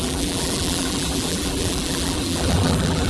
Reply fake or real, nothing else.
fake